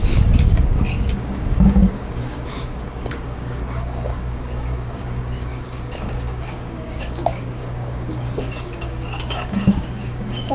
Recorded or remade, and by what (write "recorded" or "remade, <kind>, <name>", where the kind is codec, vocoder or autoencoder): remade, codec, DAC